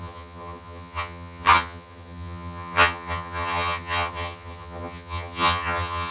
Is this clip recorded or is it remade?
remade